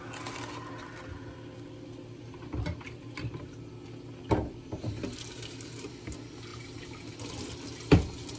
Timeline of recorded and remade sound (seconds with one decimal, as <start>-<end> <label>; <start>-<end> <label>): 0.0-4.4 recorded; 4.4-5.9 remade; 5.9-8.4 recorded